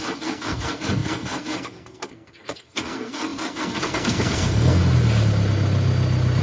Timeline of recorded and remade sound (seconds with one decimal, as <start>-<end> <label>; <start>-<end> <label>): 0.0-4.8 remade; 4.8-6.4 recorded